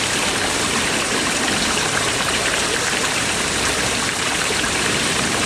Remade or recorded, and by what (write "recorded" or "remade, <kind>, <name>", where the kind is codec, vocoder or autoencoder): remade, vocoder, BigVGAN v2